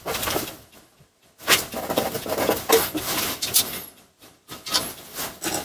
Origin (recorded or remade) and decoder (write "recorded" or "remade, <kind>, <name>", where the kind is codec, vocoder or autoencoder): recorded